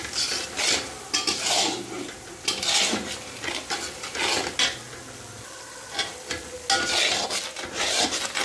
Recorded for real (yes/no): yes